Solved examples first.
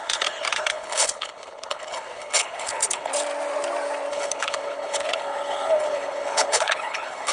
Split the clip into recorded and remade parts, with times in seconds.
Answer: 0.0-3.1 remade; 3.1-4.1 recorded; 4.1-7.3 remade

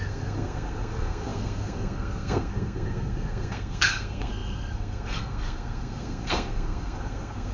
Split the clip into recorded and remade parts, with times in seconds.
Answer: 0.0-7.5 remade

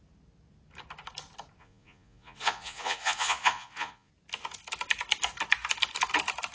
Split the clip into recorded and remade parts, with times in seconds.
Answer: 0.0-1.6 recorded; 1.6-4.1 remade; 4.1-6.5 recorded